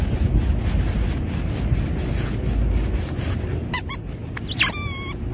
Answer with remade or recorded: recorded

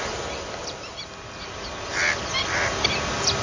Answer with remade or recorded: recorded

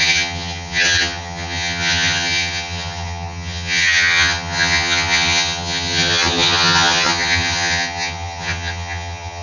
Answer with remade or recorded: remade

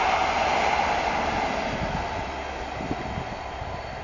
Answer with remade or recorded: recorded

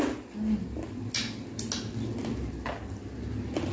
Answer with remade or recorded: recorded